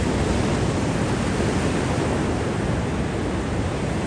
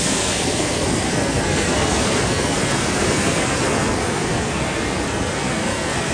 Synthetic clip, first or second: second